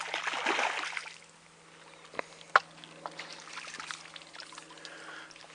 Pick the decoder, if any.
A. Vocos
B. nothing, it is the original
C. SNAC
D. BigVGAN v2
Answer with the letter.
B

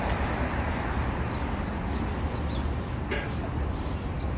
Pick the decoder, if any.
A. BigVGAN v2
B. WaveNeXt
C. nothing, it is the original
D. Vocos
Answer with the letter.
C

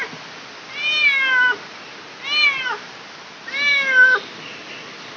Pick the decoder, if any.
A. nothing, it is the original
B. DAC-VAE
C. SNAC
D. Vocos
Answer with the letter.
A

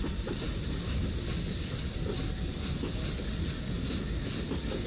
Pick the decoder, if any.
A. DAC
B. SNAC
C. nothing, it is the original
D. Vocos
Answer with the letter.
C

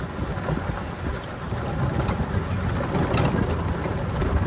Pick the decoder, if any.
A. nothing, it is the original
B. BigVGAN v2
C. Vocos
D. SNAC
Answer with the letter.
A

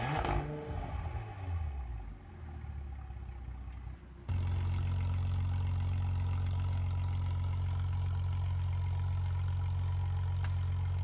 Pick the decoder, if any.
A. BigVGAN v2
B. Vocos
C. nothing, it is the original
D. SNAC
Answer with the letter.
C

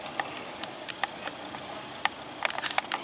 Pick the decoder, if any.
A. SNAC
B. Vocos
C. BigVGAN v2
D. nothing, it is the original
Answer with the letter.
D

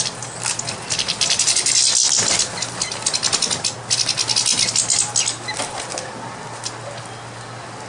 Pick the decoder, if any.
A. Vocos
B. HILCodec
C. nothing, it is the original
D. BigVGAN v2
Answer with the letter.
C